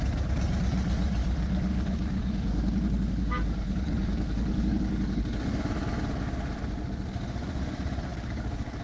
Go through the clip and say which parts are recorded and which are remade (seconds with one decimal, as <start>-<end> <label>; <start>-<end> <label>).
0.0-1.2 recorded; 1.2-5.2 remade; 5.2-8.1 recorded; 8.1-8.8 remade